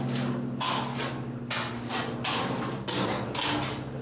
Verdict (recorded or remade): recorded